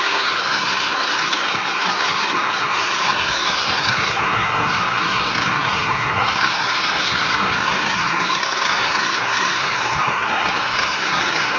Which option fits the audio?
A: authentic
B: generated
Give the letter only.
B